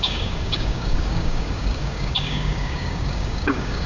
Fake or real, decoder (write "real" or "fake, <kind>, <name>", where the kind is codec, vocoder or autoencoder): fake, codec, DAC